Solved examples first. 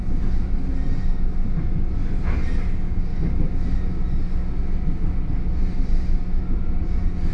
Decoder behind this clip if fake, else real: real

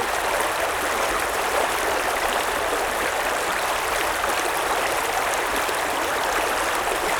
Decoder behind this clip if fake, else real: fake, vocoder, BigVGAN v2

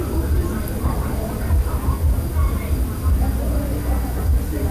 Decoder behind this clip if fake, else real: real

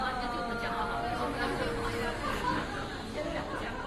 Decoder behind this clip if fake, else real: real